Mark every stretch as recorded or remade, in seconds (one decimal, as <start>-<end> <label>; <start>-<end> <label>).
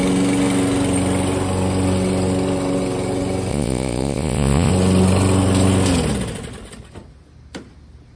0.0-3.5 recorded; 3.5-4.7 remade; 4.7-8.2 recorded